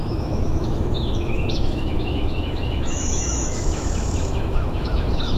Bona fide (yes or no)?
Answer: no